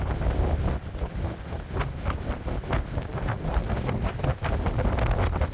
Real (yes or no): yes